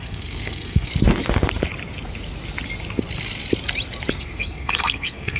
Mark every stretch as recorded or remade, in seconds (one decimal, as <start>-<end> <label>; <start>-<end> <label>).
0.0-0.9 remade; 0.9-4.1 recorded; 4.1-5.4 remade